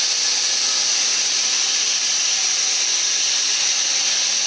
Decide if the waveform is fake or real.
real